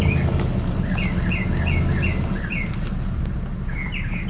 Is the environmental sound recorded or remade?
recorded